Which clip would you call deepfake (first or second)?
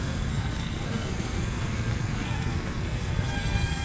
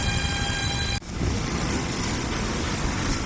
first